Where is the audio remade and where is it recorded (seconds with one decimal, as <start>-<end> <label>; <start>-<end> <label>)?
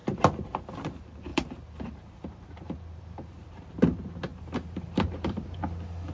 0.0-1.3 recorded; 1.3-3.3 remade; 3.3-4.3 recorded; 4.3-5.6 remade; 5.6-6.1 recorded